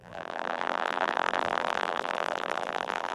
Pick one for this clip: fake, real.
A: fake